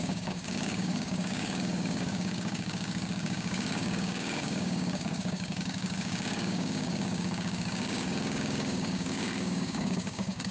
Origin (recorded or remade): remade